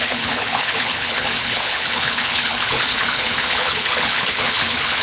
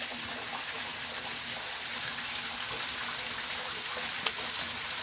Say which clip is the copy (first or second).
first